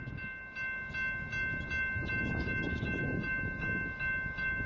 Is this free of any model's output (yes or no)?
yes